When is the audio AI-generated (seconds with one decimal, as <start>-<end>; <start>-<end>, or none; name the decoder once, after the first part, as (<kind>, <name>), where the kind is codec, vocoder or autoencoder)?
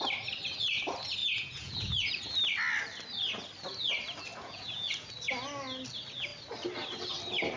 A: 1.2-2.1 (vocoder, Vocos); 4.3-5.1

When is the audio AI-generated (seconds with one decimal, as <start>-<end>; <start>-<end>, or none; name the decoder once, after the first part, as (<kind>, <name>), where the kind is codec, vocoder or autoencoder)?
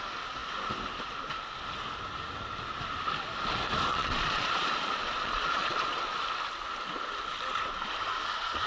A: 3.9-6.0 (vocoder, Vocos)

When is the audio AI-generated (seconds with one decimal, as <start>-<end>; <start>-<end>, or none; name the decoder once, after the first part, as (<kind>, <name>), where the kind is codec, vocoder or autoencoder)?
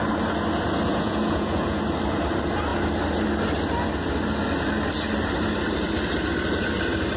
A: 0.9-1.8 (vocoder, Vocos)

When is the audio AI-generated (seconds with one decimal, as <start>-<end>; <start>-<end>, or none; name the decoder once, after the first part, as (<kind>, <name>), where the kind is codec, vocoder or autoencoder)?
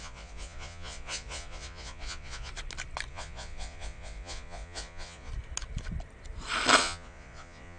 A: 0.0-2.5 (vocoder, Vocos); 3.1-5.3; 6.8-7.8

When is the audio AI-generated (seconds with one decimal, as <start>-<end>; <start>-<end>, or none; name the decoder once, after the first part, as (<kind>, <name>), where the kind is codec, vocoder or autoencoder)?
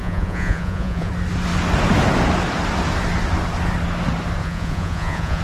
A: 0.0-1.1 (vocoder, Vocos); 4.4-5.4